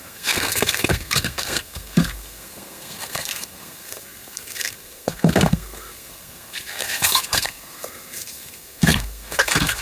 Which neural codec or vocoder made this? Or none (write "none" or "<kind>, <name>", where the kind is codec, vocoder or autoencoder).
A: codec, SNAC